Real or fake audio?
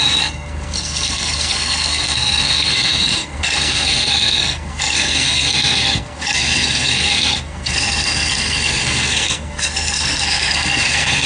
fake